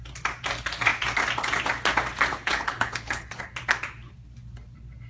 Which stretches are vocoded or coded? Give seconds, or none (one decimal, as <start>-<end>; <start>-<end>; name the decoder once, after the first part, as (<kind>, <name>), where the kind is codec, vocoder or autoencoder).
2.3-3.4 (codec, HILCodec)

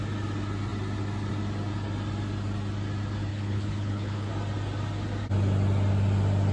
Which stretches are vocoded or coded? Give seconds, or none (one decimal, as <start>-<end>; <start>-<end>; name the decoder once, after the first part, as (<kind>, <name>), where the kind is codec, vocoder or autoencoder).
3.3-4.3 (codec, HILCodec)

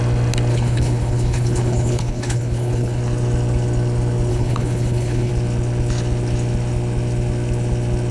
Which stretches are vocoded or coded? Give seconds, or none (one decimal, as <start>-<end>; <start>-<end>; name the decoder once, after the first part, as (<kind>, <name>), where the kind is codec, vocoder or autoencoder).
0.5-3.0 (codec, HILCodec); 4.3-5.3

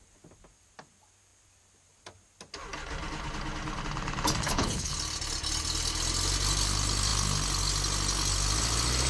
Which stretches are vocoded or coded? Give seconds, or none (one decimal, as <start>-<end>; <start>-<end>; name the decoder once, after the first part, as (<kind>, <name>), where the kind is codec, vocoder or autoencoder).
4.4-4.9 (codec, HILCodec)

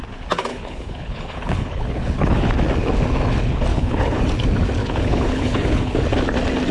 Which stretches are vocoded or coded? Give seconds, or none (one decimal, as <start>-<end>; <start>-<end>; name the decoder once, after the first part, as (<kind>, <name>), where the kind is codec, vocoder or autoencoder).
0.5-2.5 (codec, HILCodec); 3.7-4.2; 4.8-5.9

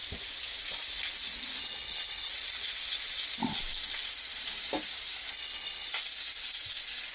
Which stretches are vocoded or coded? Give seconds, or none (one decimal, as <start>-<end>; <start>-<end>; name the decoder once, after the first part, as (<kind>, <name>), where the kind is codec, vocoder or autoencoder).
1.6-2.3 (codec, HILCodec); 5.3-5.9

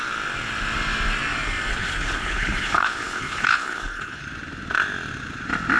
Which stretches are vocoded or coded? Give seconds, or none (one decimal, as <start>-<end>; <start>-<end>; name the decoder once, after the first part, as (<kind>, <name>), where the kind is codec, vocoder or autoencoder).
1.7-4.2 (codec, HILCodec)

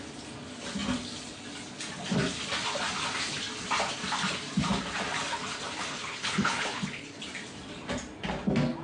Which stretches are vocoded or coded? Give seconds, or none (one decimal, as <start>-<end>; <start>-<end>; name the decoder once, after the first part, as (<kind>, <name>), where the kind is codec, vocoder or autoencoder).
5.9-7.2 (codec, HILCodec)